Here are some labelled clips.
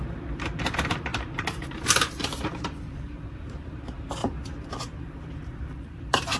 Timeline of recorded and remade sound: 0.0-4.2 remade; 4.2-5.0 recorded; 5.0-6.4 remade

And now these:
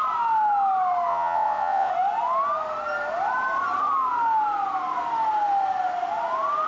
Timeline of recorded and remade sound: 0.0-1.1 recorded; 1.1-1.9 remade; 1.9-6.7 recorded

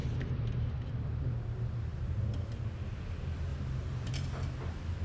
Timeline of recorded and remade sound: 0.0-1.1 remade; 1.1-1.9 recorded; 1.9-2.5 remade; 2.5-3.5 recorded; 3.5-4.1 remade; 4.1-5.0 recorded